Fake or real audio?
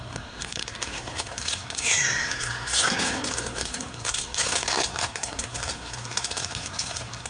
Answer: fake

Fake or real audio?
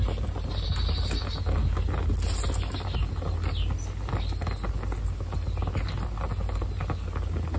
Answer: real